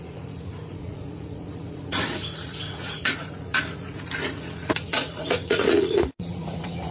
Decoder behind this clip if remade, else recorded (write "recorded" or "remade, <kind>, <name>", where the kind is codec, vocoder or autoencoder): remade, vocoder, Vocos